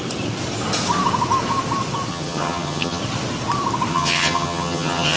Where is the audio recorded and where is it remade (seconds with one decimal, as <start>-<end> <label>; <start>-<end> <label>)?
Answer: 0.0-2.1 recorded; 2.1-3.0 remade; 3.0-3.9 recorded; 3.9-5.2 remade